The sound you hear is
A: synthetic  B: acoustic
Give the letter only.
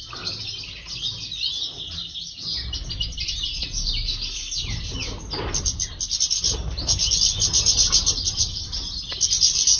B